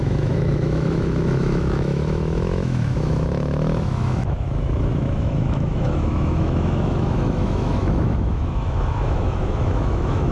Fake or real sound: fake